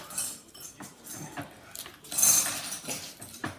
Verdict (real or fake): real